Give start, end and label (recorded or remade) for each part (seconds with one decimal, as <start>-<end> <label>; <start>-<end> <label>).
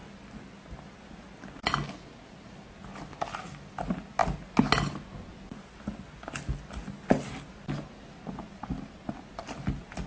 0.0-10.1 recorded